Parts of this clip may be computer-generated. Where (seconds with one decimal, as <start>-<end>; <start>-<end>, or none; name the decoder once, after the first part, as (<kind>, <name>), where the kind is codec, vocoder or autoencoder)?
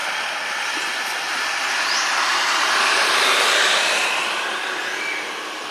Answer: 0.0-5.7 (vocoder, BigVGAN v2)